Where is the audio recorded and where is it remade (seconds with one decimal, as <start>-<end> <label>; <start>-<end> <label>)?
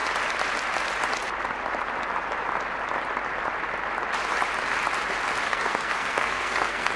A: 0.0-5.5 recorded; 5.5-7.0 remade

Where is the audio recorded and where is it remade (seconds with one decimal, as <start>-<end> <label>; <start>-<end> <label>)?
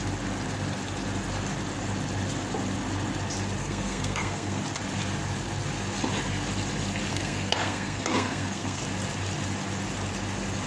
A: 0.0-3.6 recorded; 3.6-4.6 remade; 4.6-7.1 recorded; 7.1-8.8 remade; 8.8-10.7 recorded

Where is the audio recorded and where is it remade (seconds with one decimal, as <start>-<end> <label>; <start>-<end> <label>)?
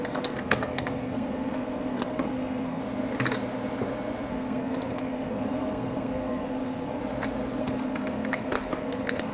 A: 0.0-2.8 remade; 2.8-4.3 recorded; 4.3-7.0 remade; 7.0-7.6 recorded; 7.6-9.3 remade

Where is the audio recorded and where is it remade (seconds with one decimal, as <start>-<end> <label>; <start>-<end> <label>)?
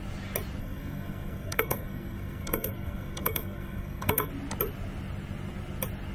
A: 0.0-0.6 recorded; 0.6-4.3 remade; 4.3-6.1 recorded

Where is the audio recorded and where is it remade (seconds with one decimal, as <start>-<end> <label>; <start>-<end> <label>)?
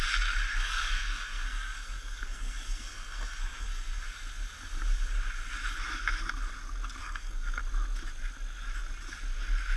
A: 0.0-0.5 recorded; 0.5-4.0 remade; 4.0-7.0 recorded; 7.0-7.6 remade; 7.6-9.8 recorded